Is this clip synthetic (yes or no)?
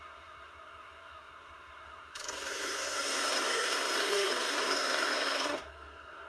yes